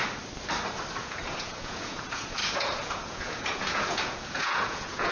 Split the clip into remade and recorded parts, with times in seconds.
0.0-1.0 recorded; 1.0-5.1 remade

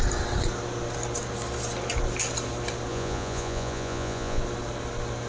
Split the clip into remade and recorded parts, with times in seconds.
0.0-2.9 recorded; 2.9-4.4 remade; 4.4-5.3 recorded

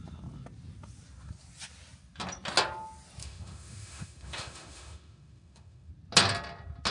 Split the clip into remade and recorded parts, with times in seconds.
0.0-3.2 recorded; 3.2-5.9 remade; 5.9-6.9 recorded

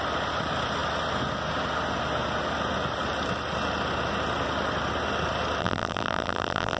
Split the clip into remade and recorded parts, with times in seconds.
0.0-5.6 recorded; 5.6-6.8 remade

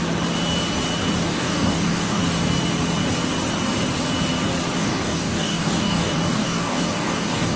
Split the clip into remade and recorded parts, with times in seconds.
0.0-1.3 recorded; 1.3-2.2 remade; 2.2-4.8 recorded; 4.8-7.6 remade

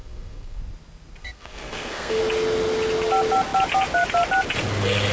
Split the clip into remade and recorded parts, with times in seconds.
0.0-0.6 remade; 0.6-1.2 recorded; 1.2-2.2 remade; 2.2-5.1 recorded